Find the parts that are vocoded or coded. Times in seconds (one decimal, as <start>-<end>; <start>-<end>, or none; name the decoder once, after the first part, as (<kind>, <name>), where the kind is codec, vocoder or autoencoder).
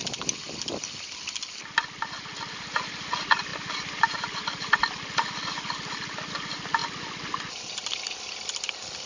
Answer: none